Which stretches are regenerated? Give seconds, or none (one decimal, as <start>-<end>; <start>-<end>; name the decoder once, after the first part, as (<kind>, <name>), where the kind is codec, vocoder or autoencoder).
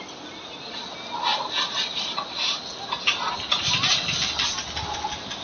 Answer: none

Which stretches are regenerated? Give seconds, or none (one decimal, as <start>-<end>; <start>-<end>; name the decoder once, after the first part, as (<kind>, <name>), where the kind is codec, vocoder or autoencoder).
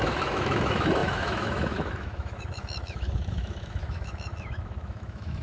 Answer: 0.0-5.4 (autoencoder, DAC-VAE)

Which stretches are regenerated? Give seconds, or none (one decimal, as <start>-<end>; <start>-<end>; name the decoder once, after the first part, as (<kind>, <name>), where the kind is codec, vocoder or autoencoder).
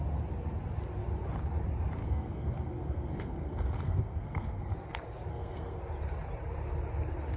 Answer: 2.0-4.7 (codec, SNAC); 5.3-5.8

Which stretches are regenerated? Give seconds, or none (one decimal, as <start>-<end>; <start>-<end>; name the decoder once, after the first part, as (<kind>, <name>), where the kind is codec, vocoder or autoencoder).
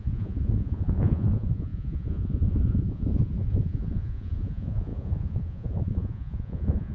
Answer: 0.0-6.9 (vocoder, Vocos)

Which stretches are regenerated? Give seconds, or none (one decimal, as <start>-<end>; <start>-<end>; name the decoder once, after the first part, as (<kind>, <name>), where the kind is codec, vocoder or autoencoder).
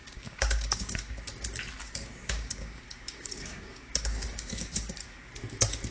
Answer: 0.0-1.2 (codec, DAC); 1.8-5.3